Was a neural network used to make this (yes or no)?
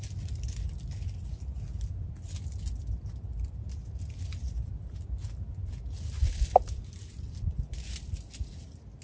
no